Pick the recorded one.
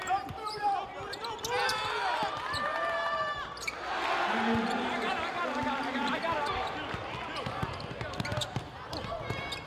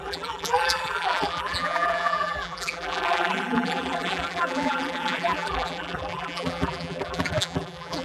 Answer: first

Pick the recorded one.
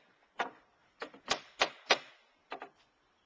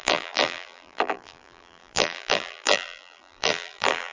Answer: first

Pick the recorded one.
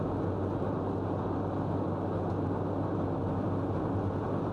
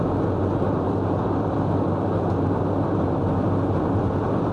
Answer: first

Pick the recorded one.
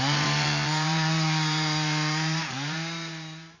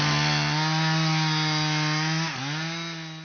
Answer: second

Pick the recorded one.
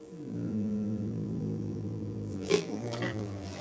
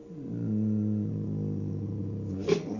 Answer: second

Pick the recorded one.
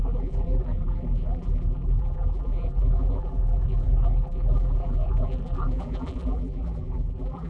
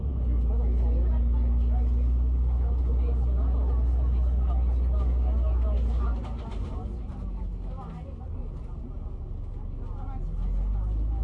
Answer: second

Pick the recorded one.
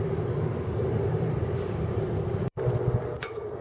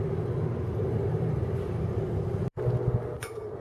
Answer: second